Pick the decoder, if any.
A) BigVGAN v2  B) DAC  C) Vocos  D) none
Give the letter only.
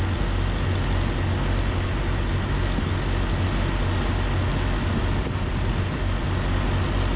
D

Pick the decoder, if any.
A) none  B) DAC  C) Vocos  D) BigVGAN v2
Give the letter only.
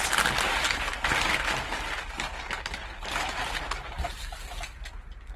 A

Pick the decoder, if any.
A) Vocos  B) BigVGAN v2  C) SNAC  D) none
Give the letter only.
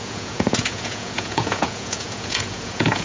A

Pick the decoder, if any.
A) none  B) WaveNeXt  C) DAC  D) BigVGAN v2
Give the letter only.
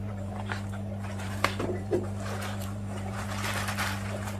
D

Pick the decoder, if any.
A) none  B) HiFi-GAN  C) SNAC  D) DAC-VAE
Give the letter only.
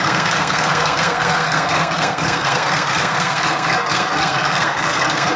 C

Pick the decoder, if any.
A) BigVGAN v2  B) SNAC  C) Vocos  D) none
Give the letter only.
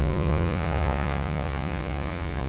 C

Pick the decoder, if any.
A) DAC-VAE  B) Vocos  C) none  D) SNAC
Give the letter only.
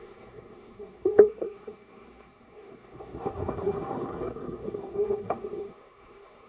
D